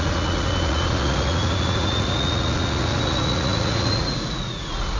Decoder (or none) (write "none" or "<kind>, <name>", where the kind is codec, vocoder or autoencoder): vocoder, Vocos